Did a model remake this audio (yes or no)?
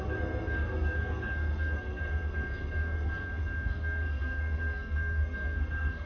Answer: yes